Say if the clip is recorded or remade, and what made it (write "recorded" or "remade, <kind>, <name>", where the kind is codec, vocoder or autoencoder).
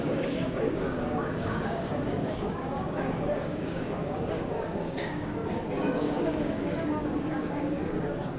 remade, codec, DAC